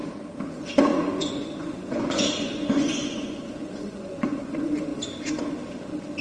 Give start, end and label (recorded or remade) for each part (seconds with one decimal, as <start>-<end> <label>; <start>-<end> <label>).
0.0-0.5 recorded; 0.5-4.9 remade; 4.9-6.2 recorded